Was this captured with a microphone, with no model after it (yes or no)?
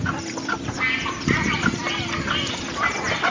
yes